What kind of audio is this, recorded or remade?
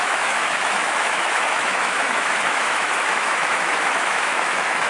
remade